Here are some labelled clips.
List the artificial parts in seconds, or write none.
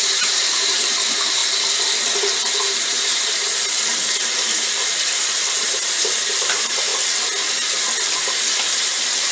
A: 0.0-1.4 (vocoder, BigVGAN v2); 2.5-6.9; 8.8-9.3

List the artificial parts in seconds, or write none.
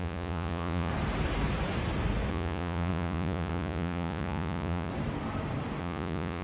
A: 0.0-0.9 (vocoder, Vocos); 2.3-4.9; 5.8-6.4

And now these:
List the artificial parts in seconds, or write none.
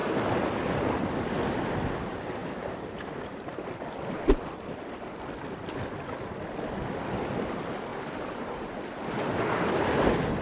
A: 2.4-6.1 (vocoder, BigVGAN v2); 7.9-8.9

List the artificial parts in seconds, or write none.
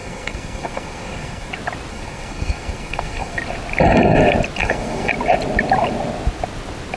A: 0.0-1.5 (codec, SNAC); 1.9-3.4; 4.6-5.1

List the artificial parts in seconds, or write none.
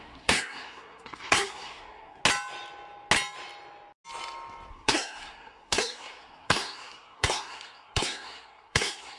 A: 0.0-2.2 (codec, SNAC); 4.7-9.2